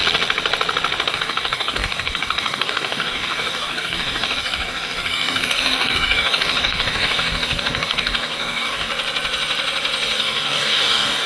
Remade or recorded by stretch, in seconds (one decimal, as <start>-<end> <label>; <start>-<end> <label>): 0.0-1.1 recorded; 1.1-8.9 remade; 8.9-10.2 recorded; 10.2-11.3 remade